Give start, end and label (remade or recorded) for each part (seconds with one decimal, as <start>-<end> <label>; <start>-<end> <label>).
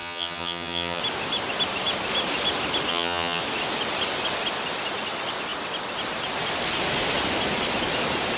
0.0-1.0 remade; 1.0-2.9 recorded; 2.9-3.4 remade; 3.4-8.4 recorded